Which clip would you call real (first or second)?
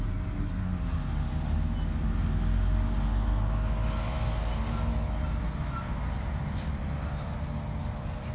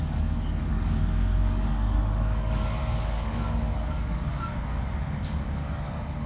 first